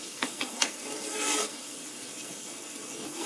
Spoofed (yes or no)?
yes